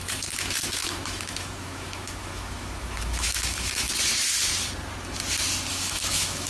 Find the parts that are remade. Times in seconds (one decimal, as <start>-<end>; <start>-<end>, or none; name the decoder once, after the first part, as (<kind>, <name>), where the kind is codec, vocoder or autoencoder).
0.0-4.1 (autoencoder, DAC-VAE); 5.7-6.5